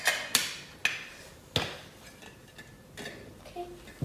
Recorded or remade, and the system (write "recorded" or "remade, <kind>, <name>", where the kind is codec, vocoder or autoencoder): recorded